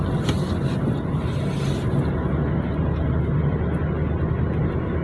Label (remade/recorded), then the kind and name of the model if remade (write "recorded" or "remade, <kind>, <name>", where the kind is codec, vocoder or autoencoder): recorded